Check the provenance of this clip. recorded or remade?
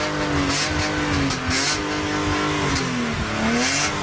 recorded